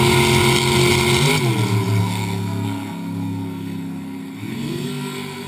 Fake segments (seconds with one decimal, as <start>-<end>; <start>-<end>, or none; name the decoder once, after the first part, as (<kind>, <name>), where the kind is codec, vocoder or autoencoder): 2.0-5.5 (codec, SNAC)